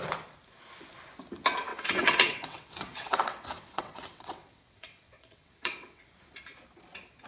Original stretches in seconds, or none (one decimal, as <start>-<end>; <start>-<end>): 0.0-1.7; 6.0-7.3